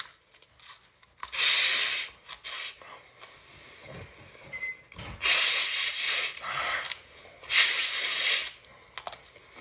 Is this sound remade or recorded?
recorded